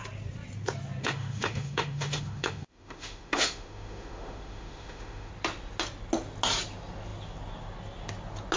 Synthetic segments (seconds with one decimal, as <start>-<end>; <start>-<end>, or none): 1.0-5.3